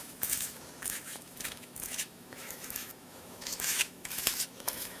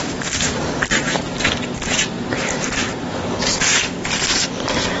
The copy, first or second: first